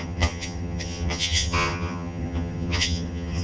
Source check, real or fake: fake